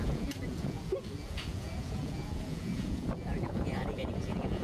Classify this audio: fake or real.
fake